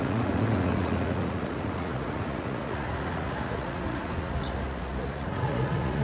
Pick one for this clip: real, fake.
fake